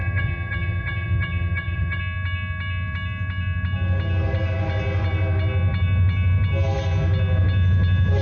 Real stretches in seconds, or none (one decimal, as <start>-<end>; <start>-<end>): 2.0-8.2